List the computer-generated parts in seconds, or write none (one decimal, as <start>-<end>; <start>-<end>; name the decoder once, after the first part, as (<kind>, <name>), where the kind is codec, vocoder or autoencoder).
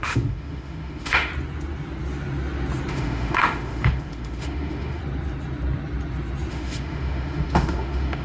0.0-1.3 (autoencoder, DAC-VAE); 2.9-5.0; 6.5-8.2